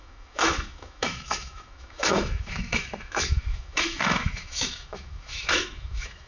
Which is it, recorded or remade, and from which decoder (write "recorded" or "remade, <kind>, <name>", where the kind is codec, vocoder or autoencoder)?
remade, autoencoder, DAC-VAE